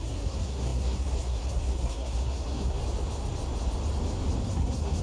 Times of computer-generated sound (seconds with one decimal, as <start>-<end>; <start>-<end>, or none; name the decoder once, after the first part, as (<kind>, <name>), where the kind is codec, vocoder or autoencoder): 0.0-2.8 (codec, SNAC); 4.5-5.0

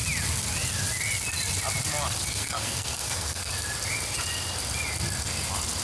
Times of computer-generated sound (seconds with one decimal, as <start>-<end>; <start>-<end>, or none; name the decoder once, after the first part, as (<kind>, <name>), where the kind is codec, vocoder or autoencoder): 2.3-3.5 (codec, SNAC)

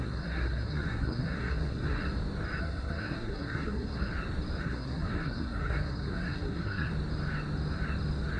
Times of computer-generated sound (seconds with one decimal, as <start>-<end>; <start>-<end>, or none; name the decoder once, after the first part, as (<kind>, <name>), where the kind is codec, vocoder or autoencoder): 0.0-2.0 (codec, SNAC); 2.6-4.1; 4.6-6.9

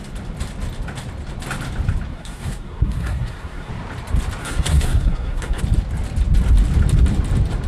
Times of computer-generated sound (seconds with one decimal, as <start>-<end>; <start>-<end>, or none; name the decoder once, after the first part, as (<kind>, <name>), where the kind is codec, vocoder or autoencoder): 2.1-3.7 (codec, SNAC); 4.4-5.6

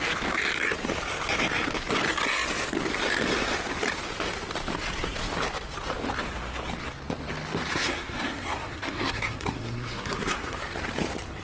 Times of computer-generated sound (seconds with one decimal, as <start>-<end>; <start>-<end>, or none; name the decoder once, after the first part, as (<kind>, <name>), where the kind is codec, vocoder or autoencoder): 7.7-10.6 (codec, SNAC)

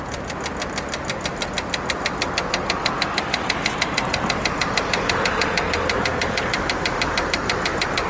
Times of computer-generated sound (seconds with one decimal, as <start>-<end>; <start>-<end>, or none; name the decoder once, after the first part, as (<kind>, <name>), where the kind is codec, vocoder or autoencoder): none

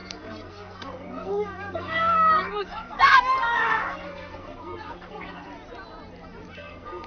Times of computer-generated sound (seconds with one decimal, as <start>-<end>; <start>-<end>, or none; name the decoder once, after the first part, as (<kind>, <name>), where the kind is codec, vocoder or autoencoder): 0.0-5.5 (codec, SNAC); 6.5-7.1

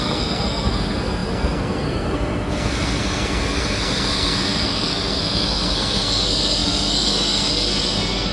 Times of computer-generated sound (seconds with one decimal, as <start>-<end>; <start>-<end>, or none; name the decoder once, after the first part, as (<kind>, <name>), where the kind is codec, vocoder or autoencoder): 0.0-8.3 (codec, SNAC)